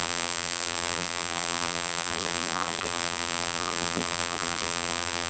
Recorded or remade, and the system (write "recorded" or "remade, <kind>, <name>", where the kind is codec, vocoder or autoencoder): remade, vocoder, BigVGAN v2